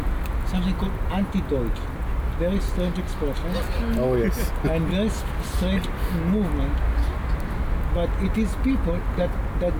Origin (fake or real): real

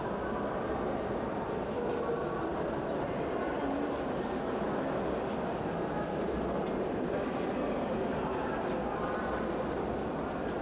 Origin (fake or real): real